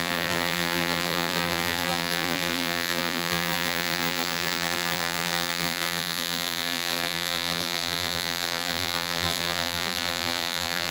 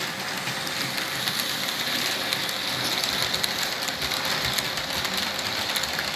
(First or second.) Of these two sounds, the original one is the second